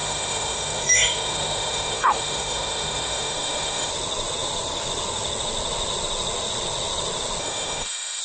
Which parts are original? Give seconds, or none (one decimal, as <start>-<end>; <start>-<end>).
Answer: 3.9-7.4